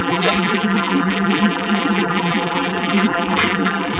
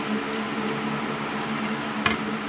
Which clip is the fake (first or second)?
first